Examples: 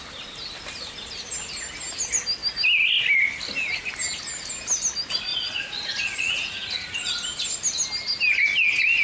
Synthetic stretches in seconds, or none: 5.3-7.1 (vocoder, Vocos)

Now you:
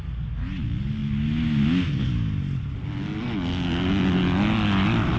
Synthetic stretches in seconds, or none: none